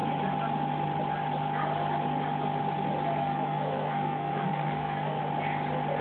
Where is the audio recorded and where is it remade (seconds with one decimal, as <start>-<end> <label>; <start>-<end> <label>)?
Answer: 0.0-3.2 recorded; 3.2-5.2 remade; 5.2-6.0 recorded